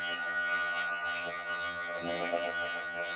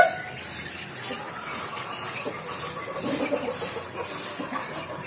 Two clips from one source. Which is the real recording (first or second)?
second